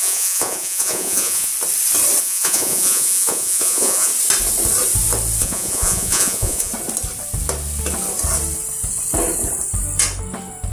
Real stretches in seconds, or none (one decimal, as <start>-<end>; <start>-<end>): 1.5-2.2; 4.1-5.4; 6.7-10.7